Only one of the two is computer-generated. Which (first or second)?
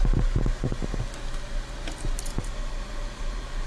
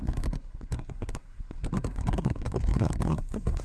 second